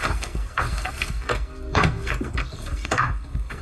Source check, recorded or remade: remade